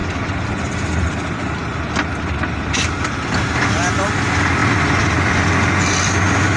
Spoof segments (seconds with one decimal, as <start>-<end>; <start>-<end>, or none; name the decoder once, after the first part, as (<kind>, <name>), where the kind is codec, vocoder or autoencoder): 4.6-5.5 (vocoder, BigVGAN v2)